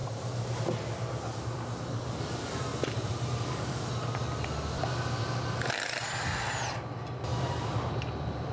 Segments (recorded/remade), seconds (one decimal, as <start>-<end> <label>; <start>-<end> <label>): 0.0-0.6 remade; 0.6-2.7 recorded; 2.7-3.9 remade; 3.9-7.3 recorded; 7.3-7.9 remade; 7.9-8.5 recorded